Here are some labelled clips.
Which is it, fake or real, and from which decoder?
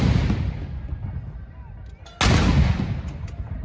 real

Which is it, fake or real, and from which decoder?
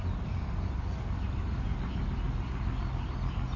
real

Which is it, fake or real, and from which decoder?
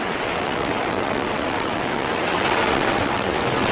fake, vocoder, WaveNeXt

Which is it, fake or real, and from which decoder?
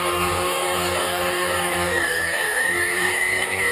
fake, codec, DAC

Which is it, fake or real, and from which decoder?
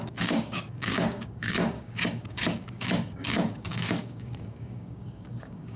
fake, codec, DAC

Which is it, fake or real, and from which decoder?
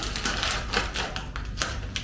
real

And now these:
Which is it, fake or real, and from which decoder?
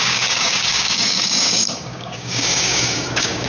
fake, codec, DAC